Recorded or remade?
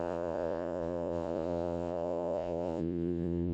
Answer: remade